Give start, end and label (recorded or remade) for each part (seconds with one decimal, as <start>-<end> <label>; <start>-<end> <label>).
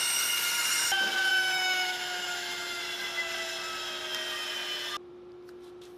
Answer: 0.0-1.3 recorded; 1.3-2.8 remade; 2.8-6.0 recorded